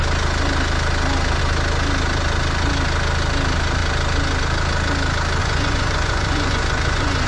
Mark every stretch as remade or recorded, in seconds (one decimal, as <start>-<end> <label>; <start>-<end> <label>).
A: 0.0-5.4 recorded; 5.4-7.3 remade